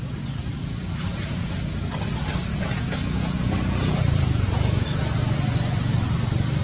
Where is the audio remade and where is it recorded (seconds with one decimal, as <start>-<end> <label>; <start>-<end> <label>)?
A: 0.0-1.0 recorded; 1.0-1.5 remade; 1.5-2.5 recorded; 2.5-4.9 remade; 4.9-6.6 recorded